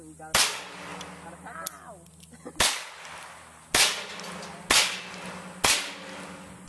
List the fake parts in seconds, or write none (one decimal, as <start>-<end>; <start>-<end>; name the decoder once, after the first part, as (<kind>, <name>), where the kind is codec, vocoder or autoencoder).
none